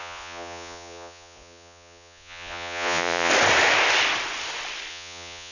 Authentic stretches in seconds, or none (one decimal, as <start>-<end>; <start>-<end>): 3.3-4.9